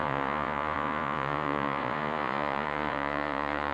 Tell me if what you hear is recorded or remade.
remade